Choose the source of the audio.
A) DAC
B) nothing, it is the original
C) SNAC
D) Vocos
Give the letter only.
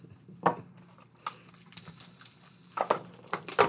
B